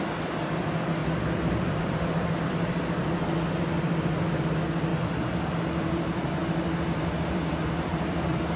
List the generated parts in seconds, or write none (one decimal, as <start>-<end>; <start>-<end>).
0.0-4.9; 5.5-8.6